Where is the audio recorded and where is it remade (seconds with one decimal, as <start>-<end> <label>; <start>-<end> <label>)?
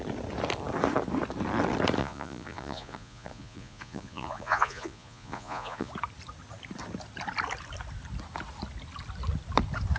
0.0-2.0 recorded; 2.0-5.9 remade; 5.9-10.0 recorded